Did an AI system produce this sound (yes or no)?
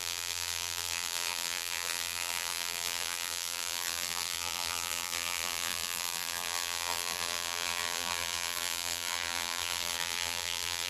yes